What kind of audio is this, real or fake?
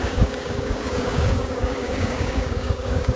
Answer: fake